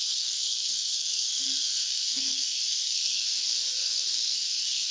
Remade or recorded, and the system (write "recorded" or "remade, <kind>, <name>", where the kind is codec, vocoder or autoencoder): remade, codec, SNAC